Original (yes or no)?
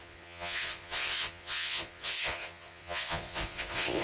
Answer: no